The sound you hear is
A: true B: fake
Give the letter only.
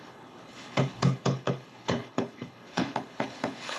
B